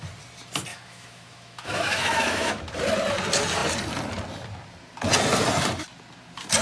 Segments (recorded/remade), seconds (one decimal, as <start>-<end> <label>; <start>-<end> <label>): 0.0-0.7 recorded; 0.7-2.6 remade; 2.6-6.6 recorded